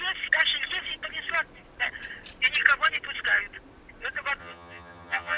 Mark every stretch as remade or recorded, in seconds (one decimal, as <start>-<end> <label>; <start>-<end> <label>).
0.0-4.4 recorded; 4.4-5.4 remade